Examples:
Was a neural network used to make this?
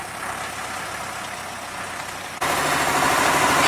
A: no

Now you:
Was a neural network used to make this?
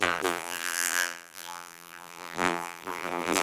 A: yes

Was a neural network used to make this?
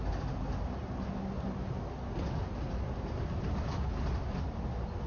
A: no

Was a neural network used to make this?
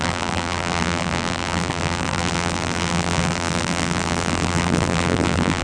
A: yes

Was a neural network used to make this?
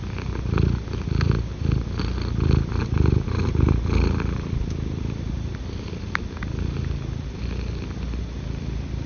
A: no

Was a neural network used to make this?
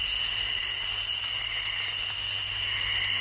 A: no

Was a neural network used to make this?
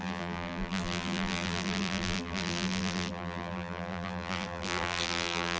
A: yes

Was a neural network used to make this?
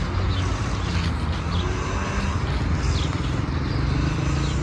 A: no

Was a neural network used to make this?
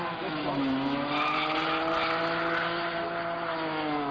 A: no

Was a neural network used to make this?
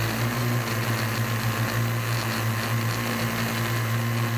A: no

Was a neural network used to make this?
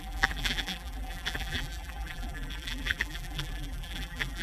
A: yes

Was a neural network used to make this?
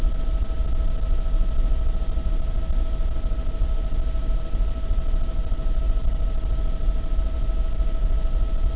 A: no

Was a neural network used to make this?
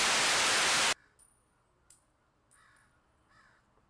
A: no